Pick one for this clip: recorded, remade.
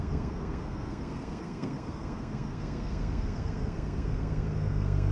remade